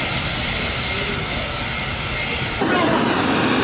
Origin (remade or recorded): recorded